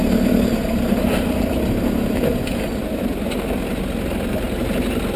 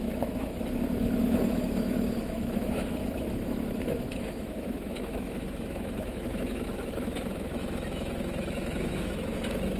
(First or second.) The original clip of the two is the first